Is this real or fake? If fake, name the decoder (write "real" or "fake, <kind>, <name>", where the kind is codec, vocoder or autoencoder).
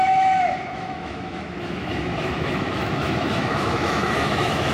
fake, autoencoder, DAC-VAE